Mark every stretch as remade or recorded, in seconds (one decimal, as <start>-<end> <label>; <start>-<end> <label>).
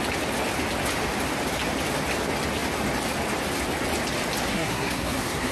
0.0-4.5 recorded; 4.5-5.5 remade